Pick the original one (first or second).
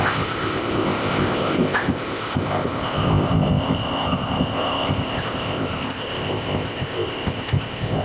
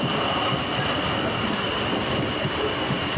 second